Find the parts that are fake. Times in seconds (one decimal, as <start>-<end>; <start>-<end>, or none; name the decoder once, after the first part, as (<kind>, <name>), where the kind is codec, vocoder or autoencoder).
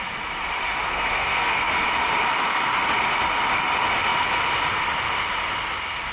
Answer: 0.9-1.7 (codec, SNAC)